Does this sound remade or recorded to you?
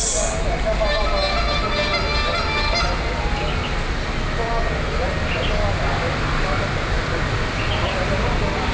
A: recorded